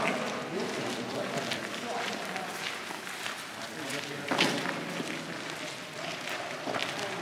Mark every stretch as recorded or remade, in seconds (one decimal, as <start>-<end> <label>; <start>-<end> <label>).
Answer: 0.0-7.2 recorded